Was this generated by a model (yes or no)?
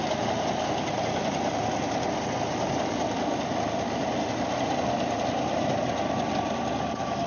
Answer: no